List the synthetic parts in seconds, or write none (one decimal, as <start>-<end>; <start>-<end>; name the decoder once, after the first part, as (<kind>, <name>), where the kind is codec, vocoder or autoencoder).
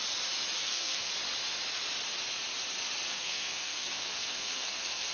0.6-1.1 (codec, SNAC); 3.1-5.1